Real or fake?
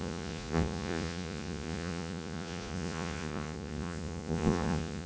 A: fake